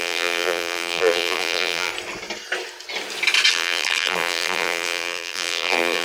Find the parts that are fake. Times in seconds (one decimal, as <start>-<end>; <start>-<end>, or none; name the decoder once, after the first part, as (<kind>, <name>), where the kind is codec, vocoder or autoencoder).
0.0-1.9 (vocoder, BigVGAN v2); 3.5-6.0